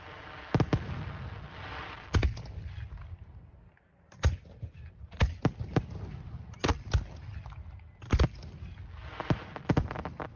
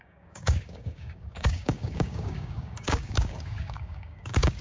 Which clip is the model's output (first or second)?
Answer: second